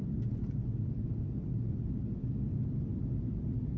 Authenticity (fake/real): real